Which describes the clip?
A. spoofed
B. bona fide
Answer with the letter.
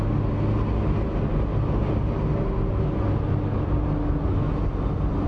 B